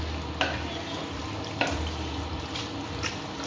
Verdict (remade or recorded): recorded